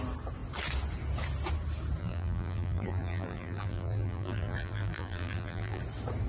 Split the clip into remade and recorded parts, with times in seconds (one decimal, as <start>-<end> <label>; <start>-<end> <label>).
0.0-2.0 recorded; 2.0-5.8 remade; 5.8-6.3 recorded